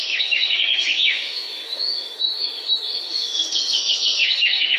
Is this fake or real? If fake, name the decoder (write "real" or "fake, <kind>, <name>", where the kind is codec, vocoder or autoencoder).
fake, autoencoder, DAC-VAE